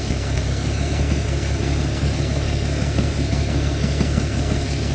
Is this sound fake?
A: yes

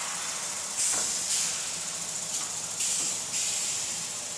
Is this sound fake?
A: no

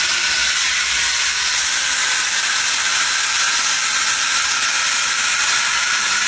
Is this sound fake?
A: no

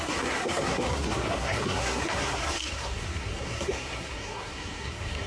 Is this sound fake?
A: yes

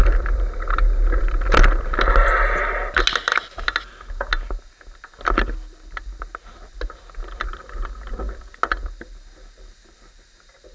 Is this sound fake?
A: no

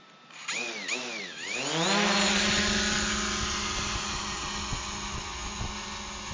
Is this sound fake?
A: no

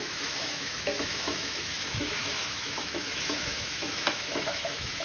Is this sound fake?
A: yes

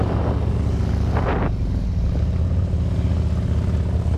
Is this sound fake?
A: no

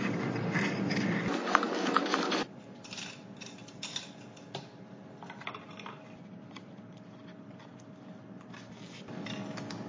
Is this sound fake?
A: no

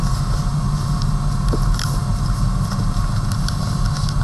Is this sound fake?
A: no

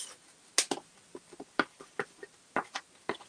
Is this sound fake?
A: no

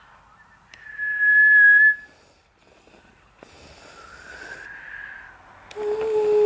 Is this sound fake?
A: no